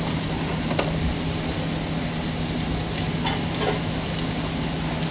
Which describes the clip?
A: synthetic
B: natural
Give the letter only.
B